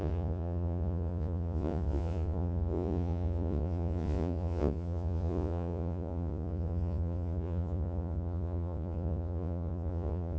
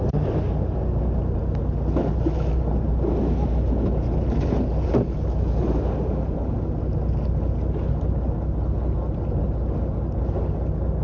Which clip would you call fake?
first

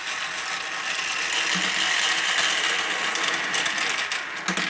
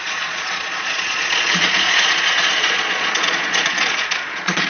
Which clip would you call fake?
second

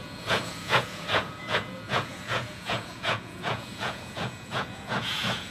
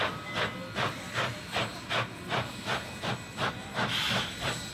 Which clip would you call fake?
first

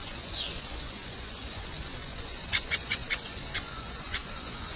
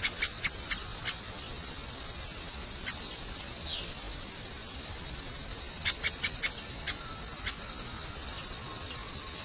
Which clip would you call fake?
first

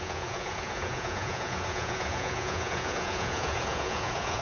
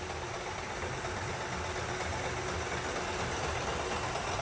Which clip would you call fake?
first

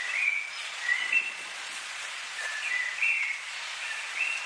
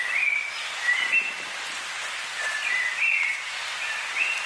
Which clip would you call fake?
first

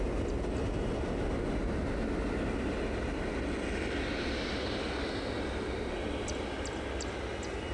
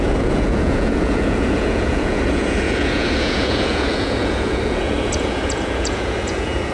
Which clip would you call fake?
second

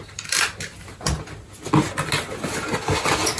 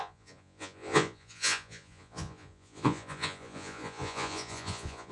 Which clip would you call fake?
second